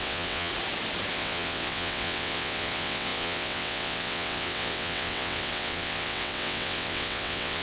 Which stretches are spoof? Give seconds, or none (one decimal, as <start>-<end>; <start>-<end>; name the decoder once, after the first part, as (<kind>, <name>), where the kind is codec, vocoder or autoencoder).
0.0-0.5 (vocoder, WaveNeXt); 1.1-7.6